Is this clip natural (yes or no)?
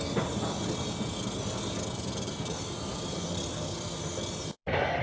yes